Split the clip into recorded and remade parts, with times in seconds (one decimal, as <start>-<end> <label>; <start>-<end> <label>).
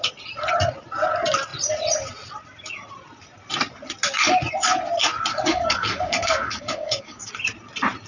0.0-5.3 recorded; 5.3-7.3 remade; 7.3-8.1 recorded